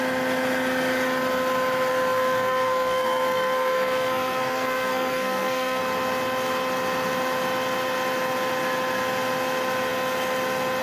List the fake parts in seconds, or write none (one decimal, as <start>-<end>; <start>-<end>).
1.9-5.8

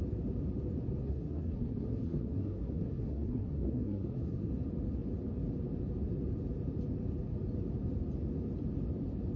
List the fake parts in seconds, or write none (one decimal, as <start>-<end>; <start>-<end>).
1.0-4.5

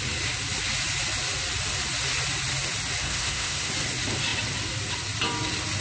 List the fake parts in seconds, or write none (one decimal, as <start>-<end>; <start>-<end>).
3.0-3.7

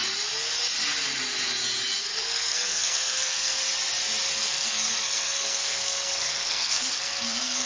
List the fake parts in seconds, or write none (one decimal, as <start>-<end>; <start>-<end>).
2.0-3.6; 4.3-7.7

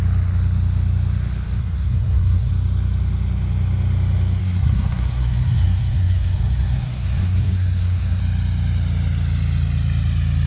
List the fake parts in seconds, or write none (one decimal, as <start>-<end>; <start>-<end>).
1.6-2.5; 4.4-8.2

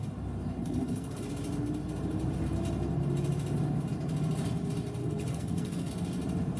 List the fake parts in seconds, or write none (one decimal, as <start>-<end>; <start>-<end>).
0.6-1.2; 5.0-5.9